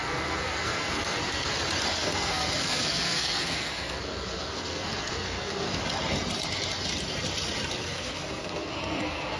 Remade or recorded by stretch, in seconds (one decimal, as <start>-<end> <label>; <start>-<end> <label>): 0.0-1.5 remade; 1.5-1.9 recorded; 1.9-5.8 remade; 5.8-7.8 recorded; 7.8-9.4 remade